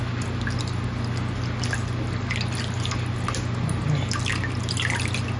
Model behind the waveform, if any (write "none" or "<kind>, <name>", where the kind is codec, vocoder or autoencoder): none